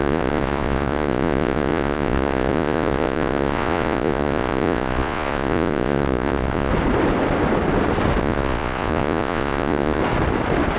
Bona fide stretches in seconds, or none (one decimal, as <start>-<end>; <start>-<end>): 6.7-8.2; 10.0-10.8